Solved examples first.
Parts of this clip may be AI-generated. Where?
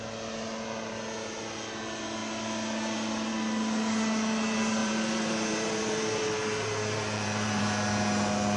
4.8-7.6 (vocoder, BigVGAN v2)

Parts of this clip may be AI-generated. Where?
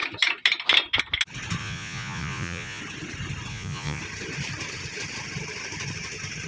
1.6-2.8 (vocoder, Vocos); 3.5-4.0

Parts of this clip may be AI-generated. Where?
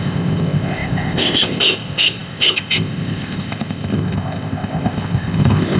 0.0-5.8 (codec, ZipCodec)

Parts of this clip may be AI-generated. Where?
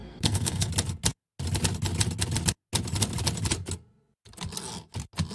0.0-0.7 (codec, SNAC)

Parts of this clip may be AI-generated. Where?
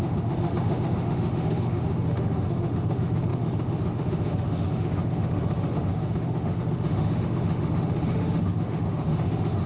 0.0-9.7 (autoencoder, DAC-VAE)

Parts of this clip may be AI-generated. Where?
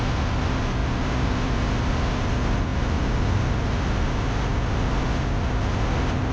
none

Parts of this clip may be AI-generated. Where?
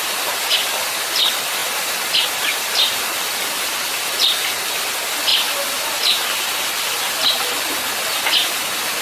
none